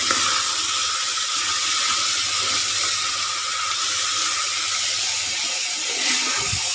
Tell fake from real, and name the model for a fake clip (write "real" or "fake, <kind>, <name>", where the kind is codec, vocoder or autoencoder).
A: real